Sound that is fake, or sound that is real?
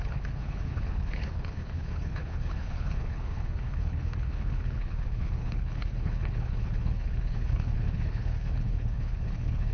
fake